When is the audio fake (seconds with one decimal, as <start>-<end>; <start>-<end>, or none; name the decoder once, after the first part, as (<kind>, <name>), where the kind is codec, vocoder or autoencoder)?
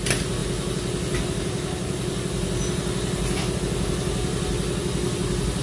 none